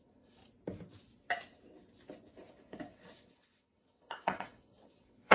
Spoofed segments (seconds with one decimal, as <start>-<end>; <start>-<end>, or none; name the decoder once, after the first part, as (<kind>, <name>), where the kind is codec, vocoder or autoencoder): 0.0-0.4 (vocoder, WaveNeXt); 2.5-5.3